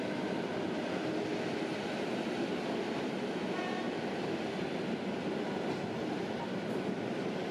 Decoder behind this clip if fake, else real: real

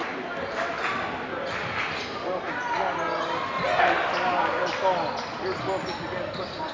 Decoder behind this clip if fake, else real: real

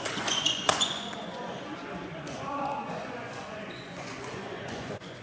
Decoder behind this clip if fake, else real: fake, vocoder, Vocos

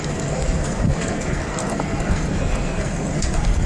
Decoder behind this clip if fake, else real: fake, codec, SNAC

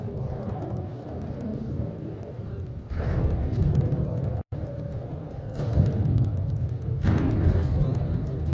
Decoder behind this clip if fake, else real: fake, codec, DAC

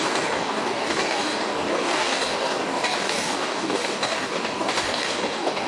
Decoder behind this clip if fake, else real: fake, codec, DAC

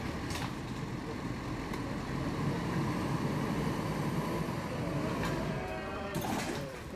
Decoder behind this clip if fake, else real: fake, vocoder, BigVGAN v2